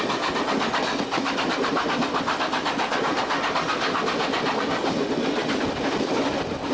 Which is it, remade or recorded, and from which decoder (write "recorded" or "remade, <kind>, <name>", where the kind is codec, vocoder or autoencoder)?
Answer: recorded